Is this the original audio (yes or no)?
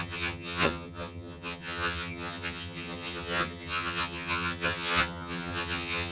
no